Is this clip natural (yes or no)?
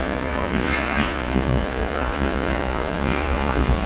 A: no